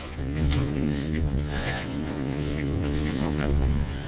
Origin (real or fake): fake